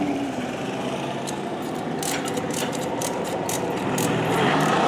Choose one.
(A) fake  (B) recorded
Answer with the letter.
A